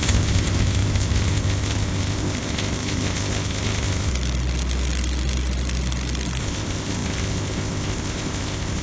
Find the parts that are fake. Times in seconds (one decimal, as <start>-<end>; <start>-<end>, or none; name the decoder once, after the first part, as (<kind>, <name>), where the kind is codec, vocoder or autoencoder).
0.0-4.1 (codec, ZipCodec); 6.4-8.8